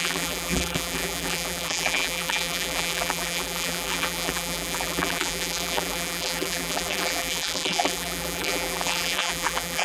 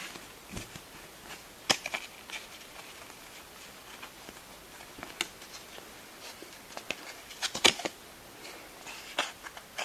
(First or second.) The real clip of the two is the second